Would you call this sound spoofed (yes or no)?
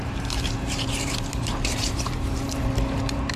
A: yes